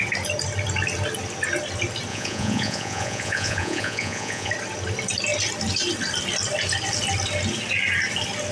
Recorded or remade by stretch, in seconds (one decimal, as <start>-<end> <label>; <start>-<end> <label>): 0.0-2.1 recorded; 2.1-4.5 remade; 4.5-8.5 recorded